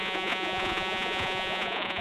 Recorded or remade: remade